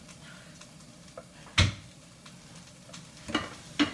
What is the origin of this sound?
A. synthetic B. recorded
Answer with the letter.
B